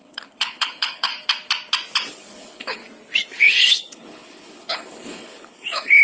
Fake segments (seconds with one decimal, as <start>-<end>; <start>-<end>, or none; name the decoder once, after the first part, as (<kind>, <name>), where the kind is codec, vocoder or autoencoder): 0.0-1.1 (codec, HILCodec); 2.1-2.8; 3.4-6.0